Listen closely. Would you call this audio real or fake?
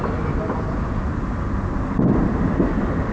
real